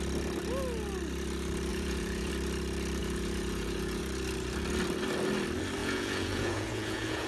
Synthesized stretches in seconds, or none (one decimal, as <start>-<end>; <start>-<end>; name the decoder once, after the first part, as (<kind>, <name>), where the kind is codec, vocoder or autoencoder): 1.7-2.3 (vocoder, Vocos); 3.0-4.0; 5.8-7.3